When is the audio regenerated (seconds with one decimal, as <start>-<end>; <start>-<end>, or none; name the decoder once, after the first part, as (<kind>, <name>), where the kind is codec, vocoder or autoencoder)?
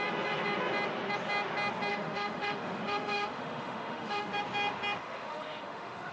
1.9-4.3 (autoencoder, DAC-VAE); 5.0-6.1